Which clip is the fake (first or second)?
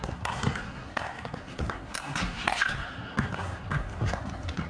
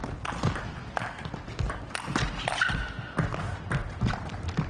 first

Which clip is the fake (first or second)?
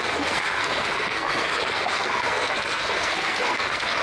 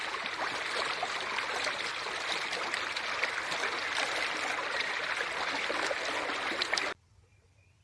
first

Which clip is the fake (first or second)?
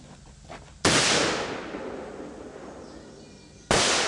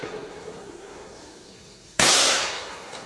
second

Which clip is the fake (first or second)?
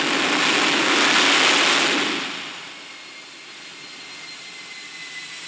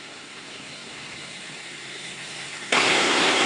second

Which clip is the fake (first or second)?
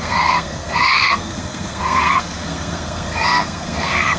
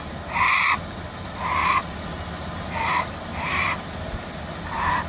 first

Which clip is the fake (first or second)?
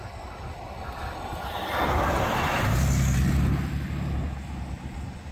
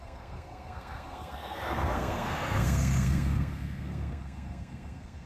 second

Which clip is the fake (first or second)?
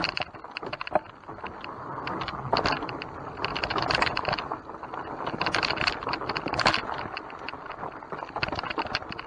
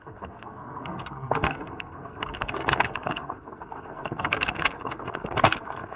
second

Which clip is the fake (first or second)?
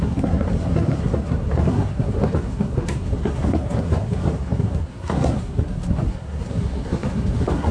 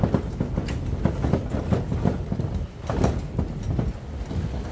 first